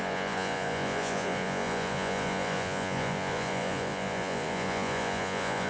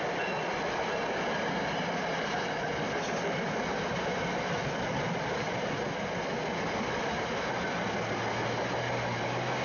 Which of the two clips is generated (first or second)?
first